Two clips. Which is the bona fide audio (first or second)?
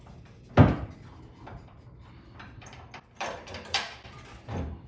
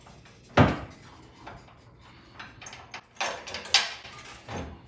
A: second